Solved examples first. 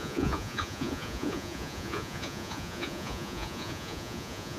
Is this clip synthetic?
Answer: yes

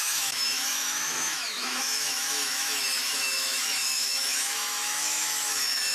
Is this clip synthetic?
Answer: yes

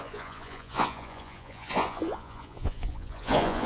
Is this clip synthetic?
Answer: yes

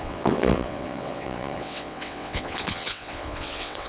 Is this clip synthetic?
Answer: yes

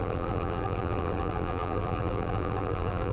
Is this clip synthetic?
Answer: yes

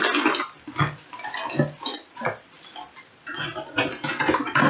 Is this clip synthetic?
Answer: no